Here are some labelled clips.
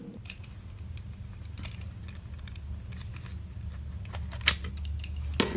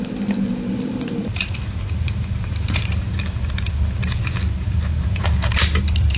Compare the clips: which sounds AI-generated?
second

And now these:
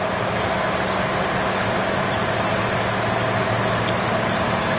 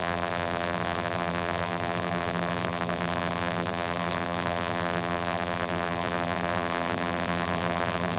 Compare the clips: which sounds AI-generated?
second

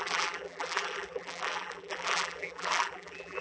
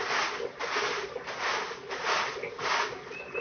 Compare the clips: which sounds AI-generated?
first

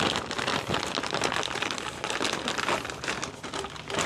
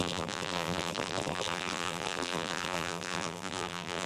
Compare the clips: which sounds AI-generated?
second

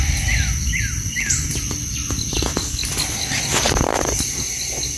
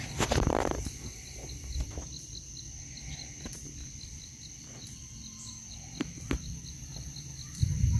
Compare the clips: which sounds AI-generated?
second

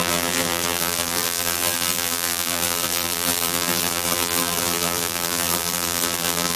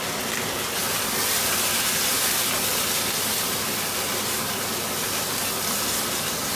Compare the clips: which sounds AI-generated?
first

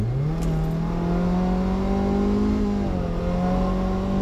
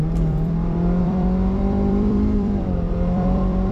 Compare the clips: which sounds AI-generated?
second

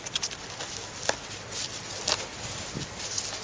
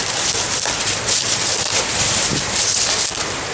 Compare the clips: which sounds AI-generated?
second